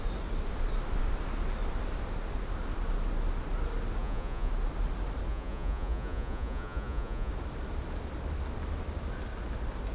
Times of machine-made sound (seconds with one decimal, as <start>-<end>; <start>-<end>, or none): 4.0-4.5; 5.3-7.3